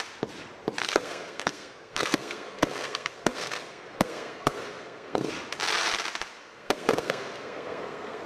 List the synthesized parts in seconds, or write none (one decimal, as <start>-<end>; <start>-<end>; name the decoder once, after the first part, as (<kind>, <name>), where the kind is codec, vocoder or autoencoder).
0.8-5.3 (codec, SNAC); 6.4-8.3